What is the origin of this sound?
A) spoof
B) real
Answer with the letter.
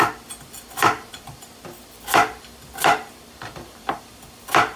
A